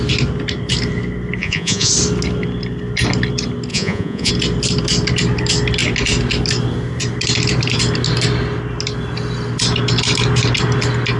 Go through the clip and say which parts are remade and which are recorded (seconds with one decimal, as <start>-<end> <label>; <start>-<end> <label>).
0.0-1.4 recorded; 1.4-1.9 remade; 1.9-3.7 recorded; 3.7-4.3 remade; 4.3-11.2 recorded